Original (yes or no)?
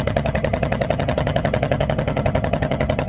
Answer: no